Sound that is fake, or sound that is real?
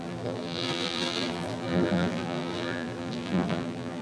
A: fake